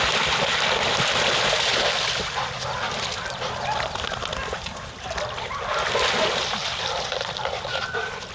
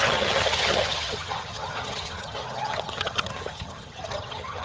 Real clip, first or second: first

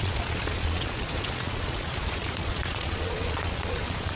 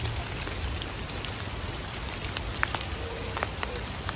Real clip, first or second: second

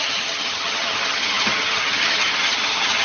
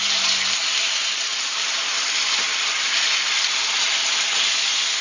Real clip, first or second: second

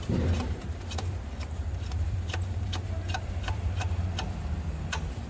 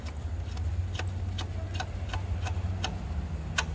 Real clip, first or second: second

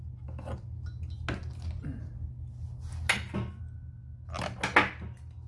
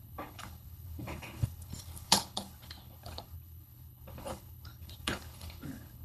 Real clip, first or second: first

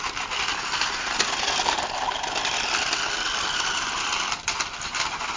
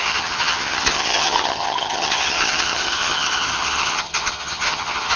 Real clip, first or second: first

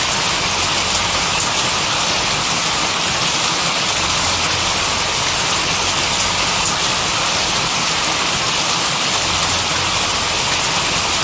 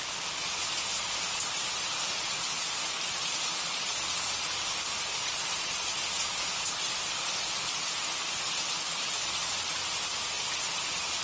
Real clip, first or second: first